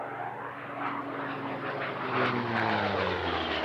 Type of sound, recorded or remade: recorded